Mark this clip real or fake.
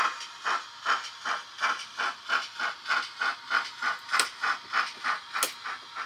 real